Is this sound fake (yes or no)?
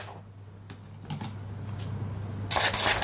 no